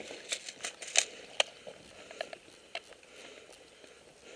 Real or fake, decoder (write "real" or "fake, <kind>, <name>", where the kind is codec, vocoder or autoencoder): real